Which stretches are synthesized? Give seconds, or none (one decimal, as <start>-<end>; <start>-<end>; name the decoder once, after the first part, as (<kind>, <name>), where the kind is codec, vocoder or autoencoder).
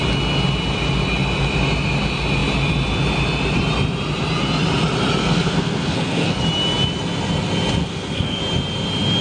5.2-6.4 (codec, SNAC); 7.8-8.4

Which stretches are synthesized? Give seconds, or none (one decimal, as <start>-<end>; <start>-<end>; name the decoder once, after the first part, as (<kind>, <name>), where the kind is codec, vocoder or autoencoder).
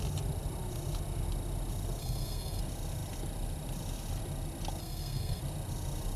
2.0-2.6 (codec, SNAC); 4.8-5.4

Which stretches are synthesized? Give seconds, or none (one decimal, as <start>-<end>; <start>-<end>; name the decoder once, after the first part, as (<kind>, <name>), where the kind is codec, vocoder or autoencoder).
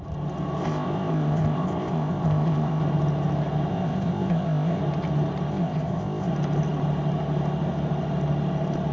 0.6-2.8 (codec, ZipCodec); 3.7-4.8; 5.5-6.3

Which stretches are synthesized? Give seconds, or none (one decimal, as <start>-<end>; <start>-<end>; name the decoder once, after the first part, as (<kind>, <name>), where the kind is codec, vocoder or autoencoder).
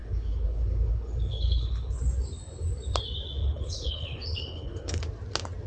0.0-2.0 (codec, HILCodec); 3.4-5.0